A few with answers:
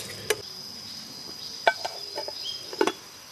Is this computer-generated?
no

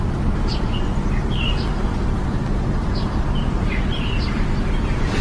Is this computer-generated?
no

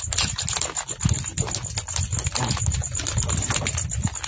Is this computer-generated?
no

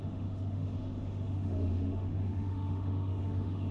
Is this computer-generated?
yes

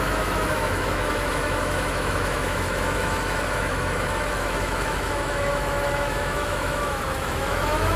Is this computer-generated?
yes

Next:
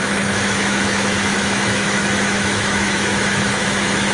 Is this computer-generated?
yes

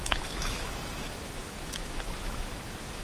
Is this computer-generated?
yes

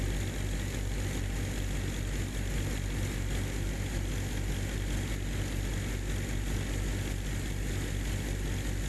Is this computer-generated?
no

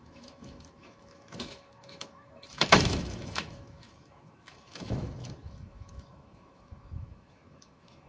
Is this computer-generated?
yes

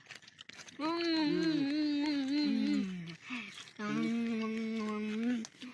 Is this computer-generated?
no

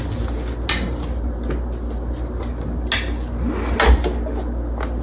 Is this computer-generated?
no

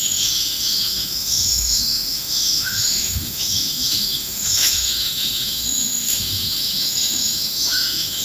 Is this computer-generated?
yes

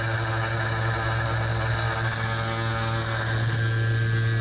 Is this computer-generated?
no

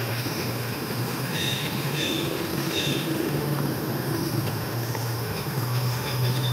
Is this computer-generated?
yes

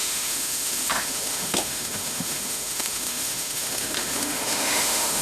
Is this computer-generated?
yes